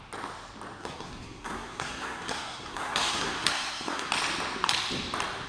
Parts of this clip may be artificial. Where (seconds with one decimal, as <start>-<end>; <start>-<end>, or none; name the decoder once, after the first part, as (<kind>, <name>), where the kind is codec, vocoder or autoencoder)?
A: 0.8-4.1 (codec, SNAC)